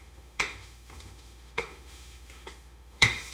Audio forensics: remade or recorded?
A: remade